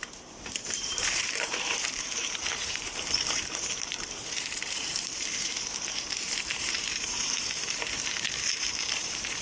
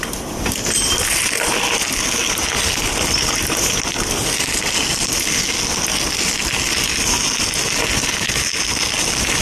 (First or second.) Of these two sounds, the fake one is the first